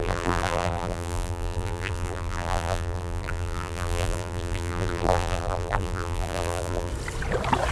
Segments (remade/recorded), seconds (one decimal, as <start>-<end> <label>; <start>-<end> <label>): 0.0-6.9 remade; 6.9-7.7 recorded